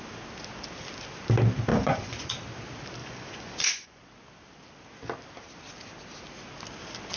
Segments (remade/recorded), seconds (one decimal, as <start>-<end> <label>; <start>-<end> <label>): 0.0-1.7 recorded; 1.7-2.2 remade; 2.2-3.0 recorded; 3.0-4.0 remade; 4.0-7.2 recorded